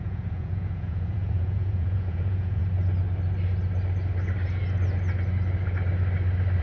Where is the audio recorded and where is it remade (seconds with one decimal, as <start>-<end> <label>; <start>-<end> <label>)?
0.0-2.6 remade; 2.6-6.6 recorded